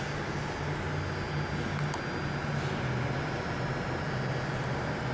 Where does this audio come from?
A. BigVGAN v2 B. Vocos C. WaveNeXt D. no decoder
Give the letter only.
D